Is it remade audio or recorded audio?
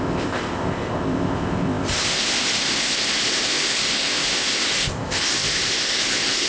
remade